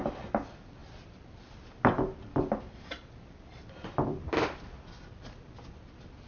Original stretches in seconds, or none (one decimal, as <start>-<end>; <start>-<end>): 0.0-6.3